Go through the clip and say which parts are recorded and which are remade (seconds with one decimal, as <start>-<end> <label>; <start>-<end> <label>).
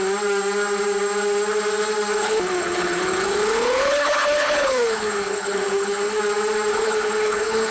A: 0.0-2.2 recorded; 2.2-6.2 remade; 6.2-6.7 recorded; 6.7-7.7 remade